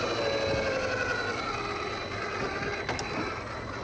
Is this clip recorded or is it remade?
recorded